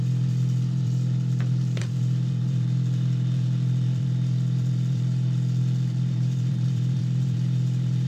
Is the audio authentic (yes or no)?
no